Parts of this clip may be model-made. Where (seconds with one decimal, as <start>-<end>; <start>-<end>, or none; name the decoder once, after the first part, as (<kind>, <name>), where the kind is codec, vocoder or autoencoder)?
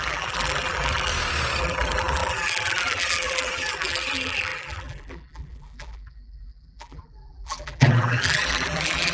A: 0.0-1.1 (vocoder, BigVGAN v2); 1.6-9.1